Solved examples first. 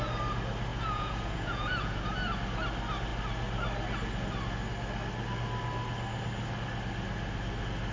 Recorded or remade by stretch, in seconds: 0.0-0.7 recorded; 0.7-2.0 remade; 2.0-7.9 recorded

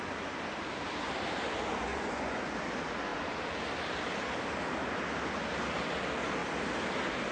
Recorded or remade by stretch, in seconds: 0.0-1.9 recorded; 1.9-2.4 remade; 2.4-7.3 recorded

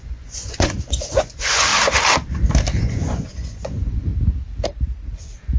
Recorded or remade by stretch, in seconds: 0.0-1.7 remade; 1.7-2.8 recorded; 2.8-4.1 remade; 4.1-5.6 recorded

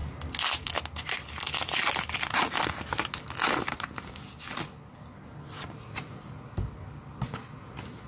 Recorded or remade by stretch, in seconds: 0.0-8.1 recorded

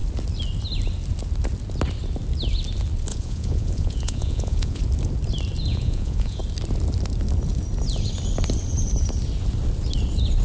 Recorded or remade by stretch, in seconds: 0.0-3.1 recorded; 3.1-4.8 remade; 4.8-5.7 recorded; 5.7-6.4 remade; 6.4-10.4 recorded

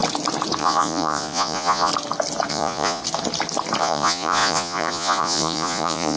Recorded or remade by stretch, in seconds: 0.0-0.6 recorded; 0.6-1.9 remade; 1.9-2.5 recorded; 2.5-3.0 remade; 3.0-3.8 recorded; 3.8-6.2 remade

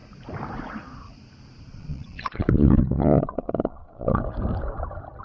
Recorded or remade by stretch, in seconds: 0.0-1.7 recorded; 1.7-4.2 remade; 4.2-5.2 recorded

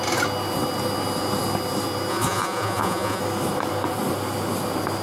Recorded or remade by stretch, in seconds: 0.0-2.1 recorded; 2.1-3.2 remade; 3.2-5.0 recorded